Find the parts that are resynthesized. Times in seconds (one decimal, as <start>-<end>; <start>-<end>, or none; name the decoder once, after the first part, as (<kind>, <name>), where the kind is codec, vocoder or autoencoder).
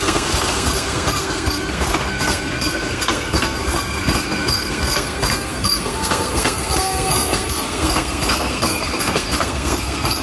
0.0-10.2 (codec, SNAC)